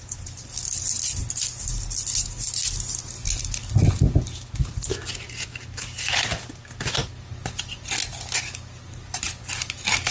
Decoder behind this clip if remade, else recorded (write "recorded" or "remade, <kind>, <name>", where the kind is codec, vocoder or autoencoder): recorded